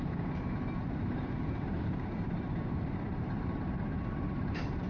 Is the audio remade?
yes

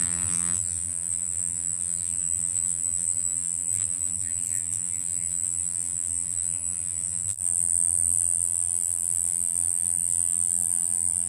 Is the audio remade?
yes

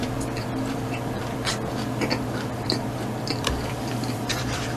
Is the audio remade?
yes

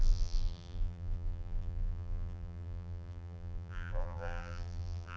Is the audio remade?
yes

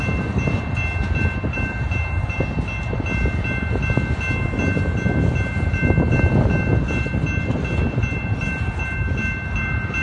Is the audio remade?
no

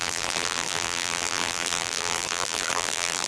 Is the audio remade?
yes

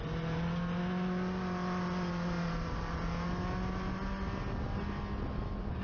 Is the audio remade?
no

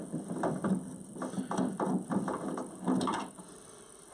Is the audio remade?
no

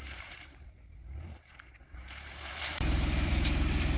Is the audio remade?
yes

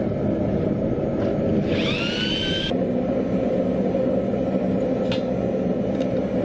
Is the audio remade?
no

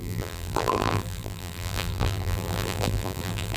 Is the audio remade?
yes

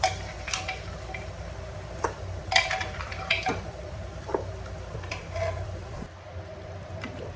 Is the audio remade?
yes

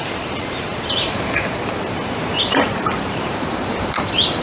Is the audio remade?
yes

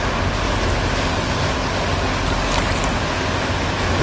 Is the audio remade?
no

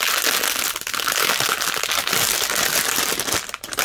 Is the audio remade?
no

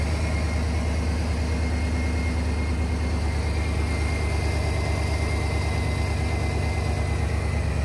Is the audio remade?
no